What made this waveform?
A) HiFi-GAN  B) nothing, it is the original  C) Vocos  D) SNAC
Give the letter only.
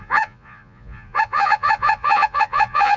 C